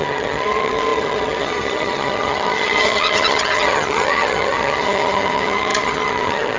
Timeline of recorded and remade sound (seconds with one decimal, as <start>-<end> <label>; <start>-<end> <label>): 0.0-6.6 remade